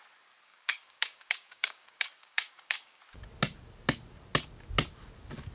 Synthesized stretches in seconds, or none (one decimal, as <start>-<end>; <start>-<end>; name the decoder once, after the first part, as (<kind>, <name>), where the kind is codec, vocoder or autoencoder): 0.5-3.0 (codec, DAC)

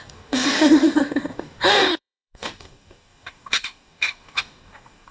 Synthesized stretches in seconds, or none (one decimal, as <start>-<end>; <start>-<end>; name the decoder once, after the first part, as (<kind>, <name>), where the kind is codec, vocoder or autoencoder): 0.0-5.1 (codec, DAC)

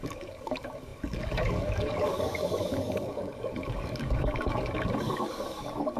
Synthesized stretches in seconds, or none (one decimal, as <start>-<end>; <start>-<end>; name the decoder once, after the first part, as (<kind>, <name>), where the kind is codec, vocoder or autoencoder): 0.0-6.0 (codec, DAC)

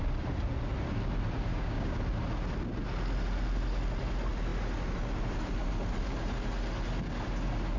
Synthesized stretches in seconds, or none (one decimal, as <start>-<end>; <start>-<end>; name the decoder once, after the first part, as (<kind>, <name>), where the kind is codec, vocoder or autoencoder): 1.5-2.0 (codec, DAC)

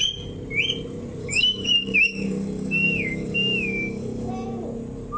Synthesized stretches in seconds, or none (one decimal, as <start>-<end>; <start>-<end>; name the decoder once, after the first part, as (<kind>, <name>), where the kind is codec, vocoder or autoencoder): 1.2-4.3 (codec, DAC)

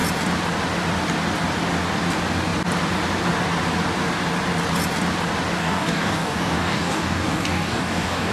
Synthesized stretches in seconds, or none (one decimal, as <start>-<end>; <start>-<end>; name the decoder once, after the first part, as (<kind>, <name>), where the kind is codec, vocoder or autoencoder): 5.6-8.3 (codec, DAC)